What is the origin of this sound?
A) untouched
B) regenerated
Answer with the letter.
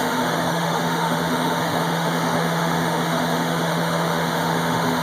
B